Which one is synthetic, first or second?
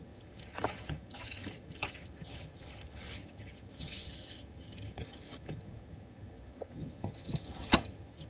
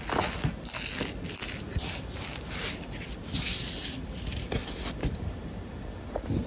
first